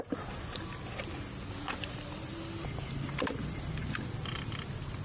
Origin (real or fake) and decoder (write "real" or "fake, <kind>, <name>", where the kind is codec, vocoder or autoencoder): real